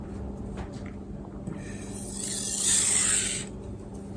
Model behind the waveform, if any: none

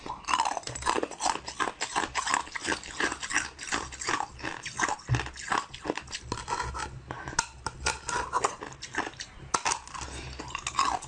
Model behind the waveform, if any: none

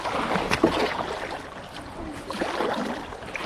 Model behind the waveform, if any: none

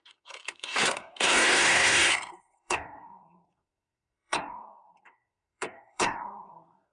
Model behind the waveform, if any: codec, SNAC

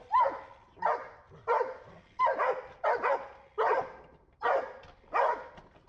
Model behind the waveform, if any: none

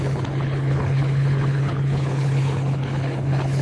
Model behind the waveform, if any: codec, HILCodec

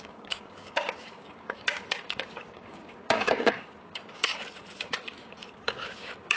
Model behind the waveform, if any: codec, DAC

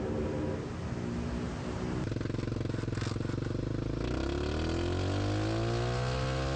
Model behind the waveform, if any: none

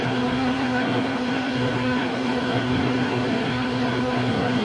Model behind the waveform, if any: codec, SNAC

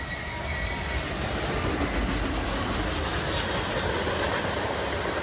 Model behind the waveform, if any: none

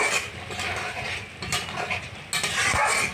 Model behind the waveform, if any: none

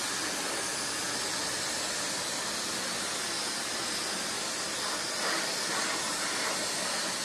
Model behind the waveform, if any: none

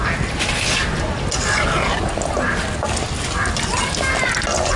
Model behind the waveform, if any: none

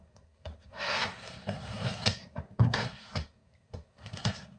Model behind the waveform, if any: codec, SNAC